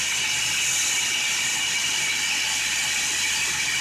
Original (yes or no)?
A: yes